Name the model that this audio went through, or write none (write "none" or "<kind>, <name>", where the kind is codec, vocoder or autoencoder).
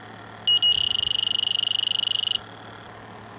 none